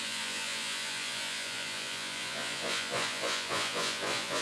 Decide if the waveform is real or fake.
fake